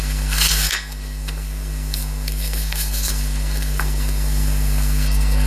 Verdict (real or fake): fake